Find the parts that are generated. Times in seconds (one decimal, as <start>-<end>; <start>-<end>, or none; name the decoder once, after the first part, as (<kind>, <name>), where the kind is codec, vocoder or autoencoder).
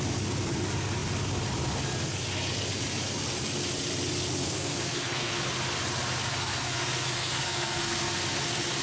4.4-5.4 (codec, SNAC); 6.3-8.1